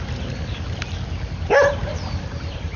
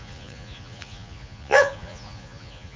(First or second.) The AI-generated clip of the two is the second